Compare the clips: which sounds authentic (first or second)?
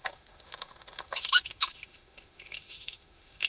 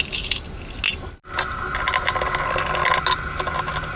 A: second